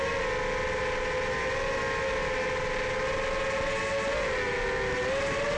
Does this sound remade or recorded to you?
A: recorded